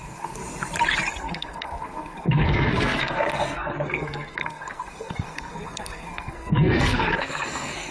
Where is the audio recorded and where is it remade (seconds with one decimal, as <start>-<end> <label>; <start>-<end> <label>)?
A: 0.0-0.4 remade; 0.4-1.1 recorded; 1.1-7.9 remade